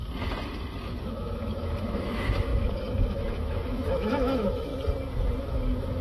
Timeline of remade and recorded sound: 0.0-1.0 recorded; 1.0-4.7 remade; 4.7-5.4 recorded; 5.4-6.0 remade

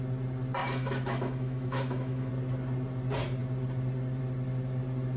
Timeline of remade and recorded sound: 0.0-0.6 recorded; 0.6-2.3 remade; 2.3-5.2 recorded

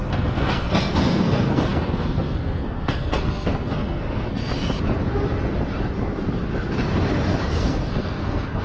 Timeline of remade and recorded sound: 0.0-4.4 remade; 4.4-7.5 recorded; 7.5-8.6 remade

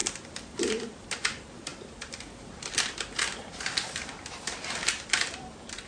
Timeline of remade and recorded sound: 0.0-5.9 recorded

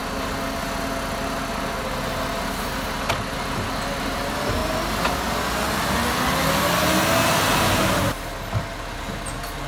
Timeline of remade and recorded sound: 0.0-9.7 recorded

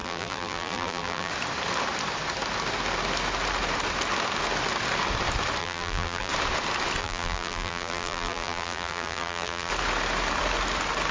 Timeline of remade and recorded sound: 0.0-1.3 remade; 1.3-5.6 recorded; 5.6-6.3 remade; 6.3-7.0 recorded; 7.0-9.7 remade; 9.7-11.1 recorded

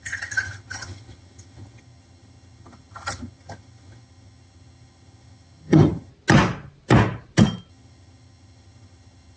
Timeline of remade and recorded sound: 0.0-6.1 remade; 6.1-7.7 recorded; 7.7-9.4 remade

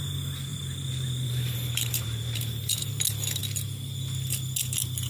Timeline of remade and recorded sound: 0.0-0.5 recorded; 0.5-2.9 remade; 2.9-5.1 recorded